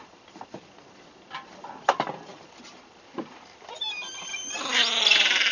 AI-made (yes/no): yes